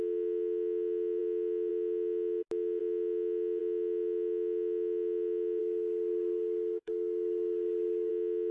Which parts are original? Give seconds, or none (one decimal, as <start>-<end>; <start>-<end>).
0.0-5.6; 8.1-8.5